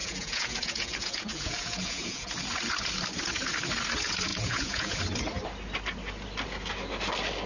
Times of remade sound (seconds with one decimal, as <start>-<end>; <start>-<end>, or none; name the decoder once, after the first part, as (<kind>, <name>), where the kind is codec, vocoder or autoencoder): 0.0-2.3 (vocoder, Vocos); 4.3-5.0